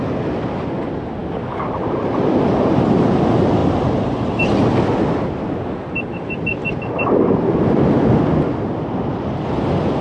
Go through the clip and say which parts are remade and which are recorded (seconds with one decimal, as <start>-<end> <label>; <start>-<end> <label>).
0.0-10.0 recorded